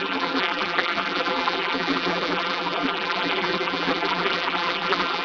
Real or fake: fake